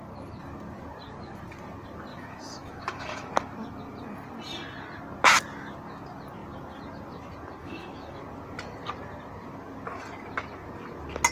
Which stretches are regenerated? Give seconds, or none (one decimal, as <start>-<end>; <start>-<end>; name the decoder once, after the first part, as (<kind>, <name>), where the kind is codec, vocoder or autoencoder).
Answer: 2.1-3.3 (autoencoder, DAC-VAE); 7.6-8.2